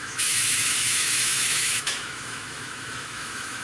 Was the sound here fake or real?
fake